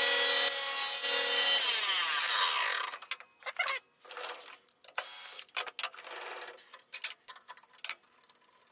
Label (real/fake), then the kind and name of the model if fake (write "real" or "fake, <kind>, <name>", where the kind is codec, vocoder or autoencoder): real